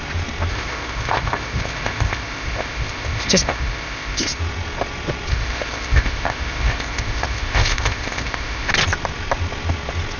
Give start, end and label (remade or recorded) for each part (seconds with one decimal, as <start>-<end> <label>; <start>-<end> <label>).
0.0-0.5 recorded; 0.5-4.4 remade; 4.4-5.3 recorded; 5.3-8.7 remade; 8.7-10.2 recorded